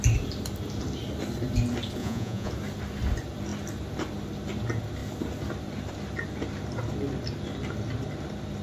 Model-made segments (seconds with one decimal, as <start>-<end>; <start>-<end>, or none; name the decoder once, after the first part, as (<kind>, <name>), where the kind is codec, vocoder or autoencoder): 2.0-2.5 (vocoder, Vocos)